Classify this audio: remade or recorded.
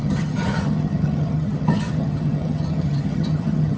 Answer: remade